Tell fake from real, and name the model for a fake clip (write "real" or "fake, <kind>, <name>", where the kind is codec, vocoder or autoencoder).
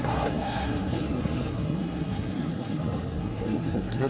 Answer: fake, codec, SNAC